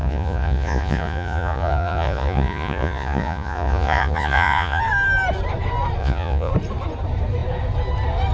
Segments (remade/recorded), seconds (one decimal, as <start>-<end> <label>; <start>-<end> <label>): 0.0-4.8 remade; 4.8-6.0 recorded; 6.0-6.5 remade; 6.5-8.3 recorded